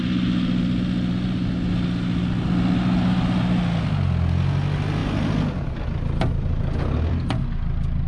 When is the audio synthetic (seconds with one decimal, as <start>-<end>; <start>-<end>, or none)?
none